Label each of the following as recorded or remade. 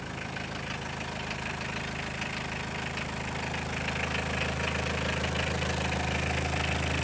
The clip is recorded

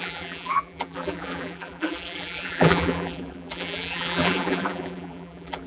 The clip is remade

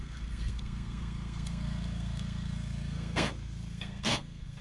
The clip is remade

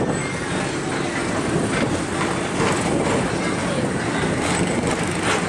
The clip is recorded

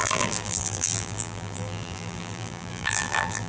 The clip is remade